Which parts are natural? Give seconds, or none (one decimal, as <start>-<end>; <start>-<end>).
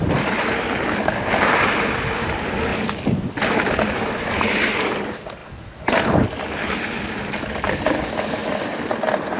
2.7-3.5; 5.4-6.2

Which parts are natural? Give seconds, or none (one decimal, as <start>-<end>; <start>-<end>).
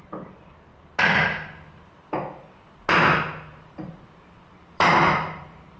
0.0-3.5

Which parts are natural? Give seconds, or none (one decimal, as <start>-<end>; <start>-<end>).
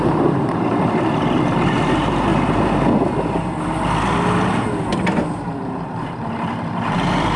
2.3-4.9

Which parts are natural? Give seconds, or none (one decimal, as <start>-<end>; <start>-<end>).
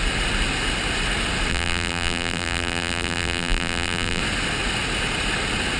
0.0-1.5; 4.2-5.8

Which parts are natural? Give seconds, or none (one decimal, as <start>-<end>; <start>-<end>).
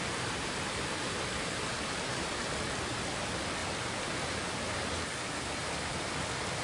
3.6-5.3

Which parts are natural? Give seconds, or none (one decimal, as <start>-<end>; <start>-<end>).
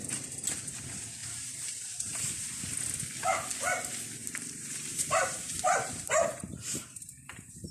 0.5-1.2; 2.6-4.2